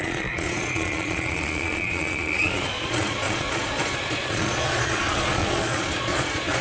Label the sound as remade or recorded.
remade